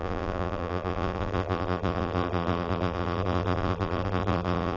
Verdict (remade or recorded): remade